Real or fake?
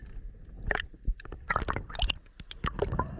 real